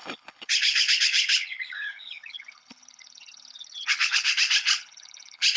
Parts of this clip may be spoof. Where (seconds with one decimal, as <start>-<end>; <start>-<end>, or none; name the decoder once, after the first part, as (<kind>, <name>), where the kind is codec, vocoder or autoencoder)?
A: 0.0-5.6 (codec, HILCodec)